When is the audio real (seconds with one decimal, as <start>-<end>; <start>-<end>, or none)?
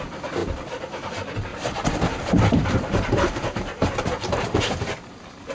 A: 0.0-0.4; 1.1-1.5; 4.8-5.5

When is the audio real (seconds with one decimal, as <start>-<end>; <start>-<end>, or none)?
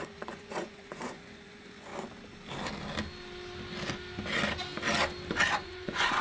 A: 1.9-5.6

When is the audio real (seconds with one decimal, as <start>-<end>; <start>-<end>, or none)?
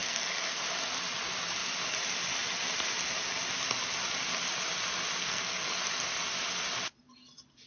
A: 0.6-5.2; 5.8-7.7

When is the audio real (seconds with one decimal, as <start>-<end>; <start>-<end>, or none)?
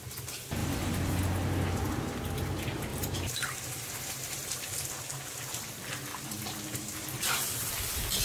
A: 0.0-2.9; 4.6-6.1; 7.7-8.2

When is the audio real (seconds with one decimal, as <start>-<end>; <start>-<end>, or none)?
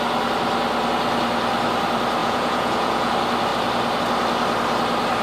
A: 0.0-2.2; 3.1-5.2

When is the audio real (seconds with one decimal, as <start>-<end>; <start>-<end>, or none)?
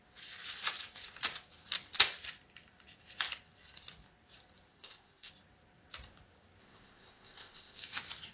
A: 0.0-4.7; 5.3-6.6; 7.8-8.3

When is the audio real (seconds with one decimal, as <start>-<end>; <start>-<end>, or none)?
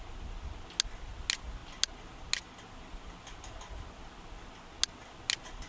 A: 0.0-5.7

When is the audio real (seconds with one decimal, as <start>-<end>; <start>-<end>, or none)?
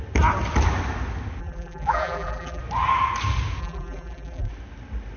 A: 0.0-1.4; 2.6-3.6; 4.5-5.2